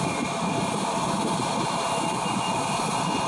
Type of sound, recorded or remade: recorded